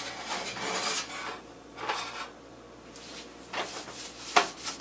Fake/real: real